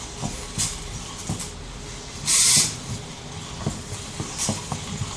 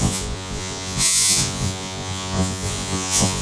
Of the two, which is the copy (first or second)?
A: second